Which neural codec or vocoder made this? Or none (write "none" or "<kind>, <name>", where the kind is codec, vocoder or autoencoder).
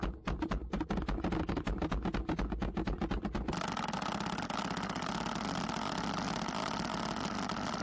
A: none